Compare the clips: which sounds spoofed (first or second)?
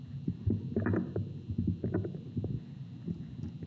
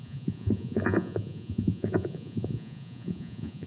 second